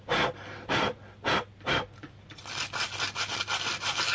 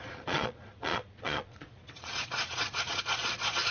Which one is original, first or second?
first